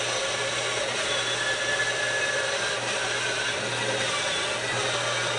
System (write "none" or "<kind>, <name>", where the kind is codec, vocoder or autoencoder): none